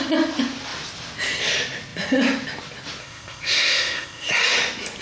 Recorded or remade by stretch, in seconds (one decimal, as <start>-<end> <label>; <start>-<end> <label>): 0.0-3.0 recorded; 3.0-4.3 remade; 4.3-5.0 recorded